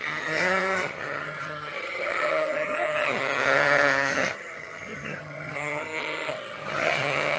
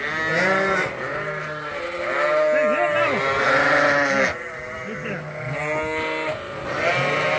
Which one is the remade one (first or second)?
first